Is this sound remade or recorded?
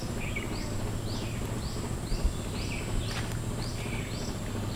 recorded